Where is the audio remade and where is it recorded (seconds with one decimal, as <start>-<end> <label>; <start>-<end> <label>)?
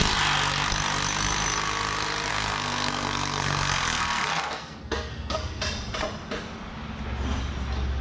0.0-2.3 recorded; 2.3-5.6 remade; 5.6-8.0 recorded